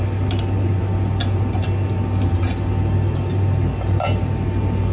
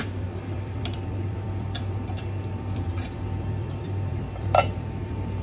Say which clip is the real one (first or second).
first